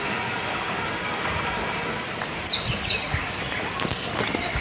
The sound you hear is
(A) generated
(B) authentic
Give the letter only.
B